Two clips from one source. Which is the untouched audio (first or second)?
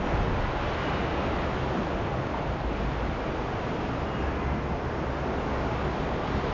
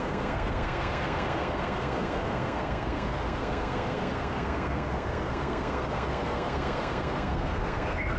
first